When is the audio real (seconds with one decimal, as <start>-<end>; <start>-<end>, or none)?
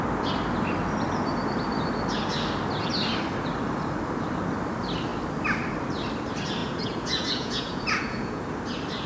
0.0-6.6; 8.4-9.1